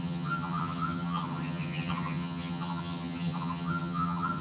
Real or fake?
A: fake